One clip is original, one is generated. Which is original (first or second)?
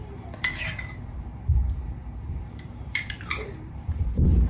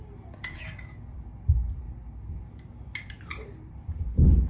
second